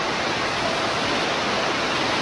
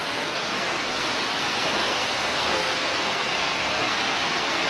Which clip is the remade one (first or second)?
second